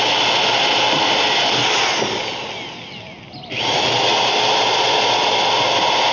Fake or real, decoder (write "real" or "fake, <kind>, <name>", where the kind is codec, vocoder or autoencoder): real